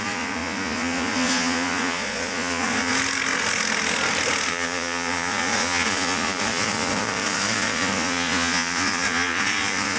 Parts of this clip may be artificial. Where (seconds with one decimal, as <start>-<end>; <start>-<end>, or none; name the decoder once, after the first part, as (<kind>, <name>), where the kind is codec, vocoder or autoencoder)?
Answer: 0.0-2.9 (vocoder, Vocos); 4.5-10.0